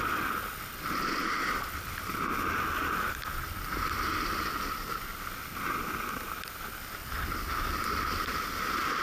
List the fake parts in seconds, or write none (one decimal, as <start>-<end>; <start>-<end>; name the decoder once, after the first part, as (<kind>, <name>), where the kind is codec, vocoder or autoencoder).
1.2-2.3 (vocoder, BigVGAN v2)